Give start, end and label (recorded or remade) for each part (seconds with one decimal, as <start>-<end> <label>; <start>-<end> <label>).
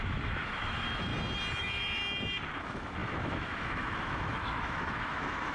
0.0-1.1 remade; 1.1-1.6 recorded; 1.6-2.0 remade; 2.0-2.6 recorded; 2.6-5.5 remade